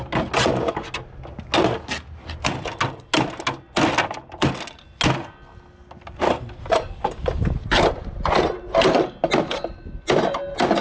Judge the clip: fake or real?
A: real